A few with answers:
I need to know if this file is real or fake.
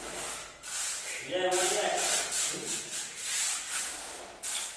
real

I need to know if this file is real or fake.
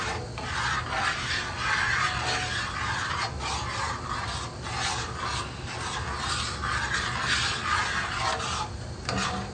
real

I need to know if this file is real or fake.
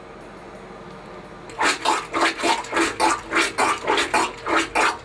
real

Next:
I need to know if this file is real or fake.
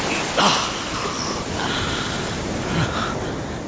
real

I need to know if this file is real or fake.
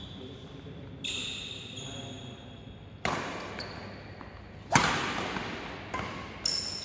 real